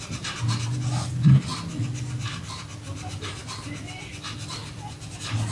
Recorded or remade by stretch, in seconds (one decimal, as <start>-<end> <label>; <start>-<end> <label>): 0.0-5.5 recorded